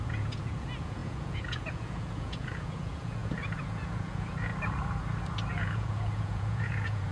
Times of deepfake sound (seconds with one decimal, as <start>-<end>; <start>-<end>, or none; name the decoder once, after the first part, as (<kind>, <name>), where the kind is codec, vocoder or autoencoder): 0.0-4.5 (vocoder, Vocos); 5.5-7.1